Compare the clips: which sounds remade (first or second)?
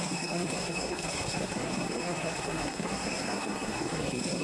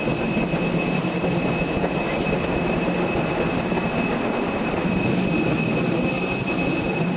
first